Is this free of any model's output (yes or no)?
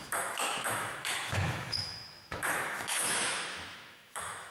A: no